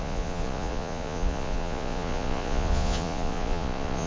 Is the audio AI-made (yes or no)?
yes